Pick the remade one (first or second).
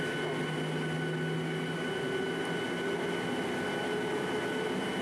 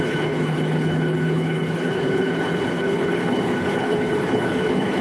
second